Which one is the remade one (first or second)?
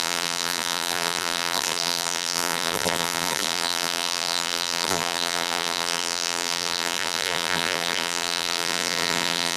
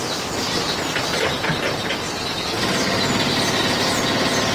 first